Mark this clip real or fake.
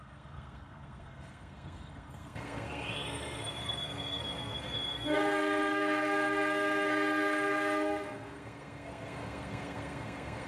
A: fake